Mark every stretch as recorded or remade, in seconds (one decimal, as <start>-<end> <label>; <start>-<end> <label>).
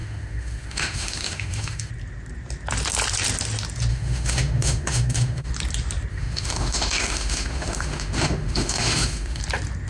0.0-1.9 remade; 1.9-3.9 recorded; 3.9-5.5 remade; 5.5-6.1 recorded; 6.1-9.4 remade; 9.4-9.9 recorded